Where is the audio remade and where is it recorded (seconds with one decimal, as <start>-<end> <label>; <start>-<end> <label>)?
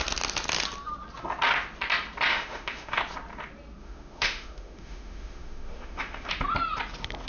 0.0-2.3 recorded; 2.3-3.0 remade; 3.0-3.8 recorded; 3.8-6.3 remade; 6.3-7.3 recorded